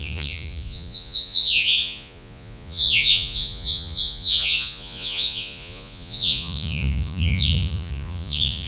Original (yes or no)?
no